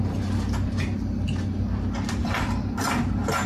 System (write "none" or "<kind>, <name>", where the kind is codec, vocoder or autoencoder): none